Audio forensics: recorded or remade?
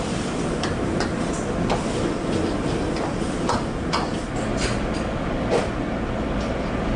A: recorded